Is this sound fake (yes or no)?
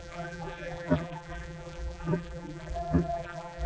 yes